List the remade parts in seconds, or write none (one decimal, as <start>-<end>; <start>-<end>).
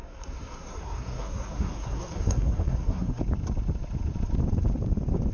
0.0-3.2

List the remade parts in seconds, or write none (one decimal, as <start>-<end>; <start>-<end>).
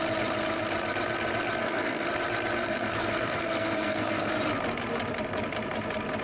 1.6-2.1; 2.6-4.3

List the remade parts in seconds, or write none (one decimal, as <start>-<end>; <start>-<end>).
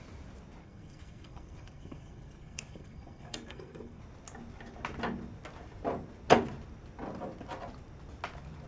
0.6-4.0